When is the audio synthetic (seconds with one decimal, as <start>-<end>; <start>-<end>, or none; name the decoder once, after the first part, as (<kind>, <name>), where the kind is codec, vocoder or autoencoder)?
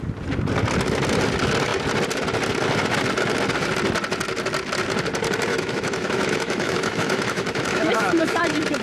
5.5-8.4 (autoencoder, DAC-VAE)